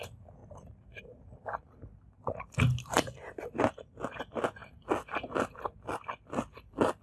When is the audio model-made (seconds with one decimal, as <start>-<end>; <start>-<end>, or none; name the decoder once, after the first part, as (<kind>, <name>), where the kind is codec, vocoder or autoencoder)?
none